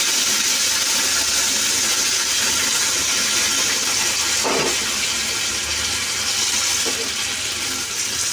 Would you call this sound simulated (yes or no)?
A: no